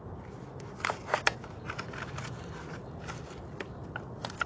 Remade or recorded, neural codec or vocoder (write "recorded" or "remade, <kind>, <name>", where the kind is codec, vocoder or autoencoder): recorded